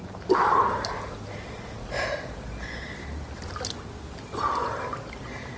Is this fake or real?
real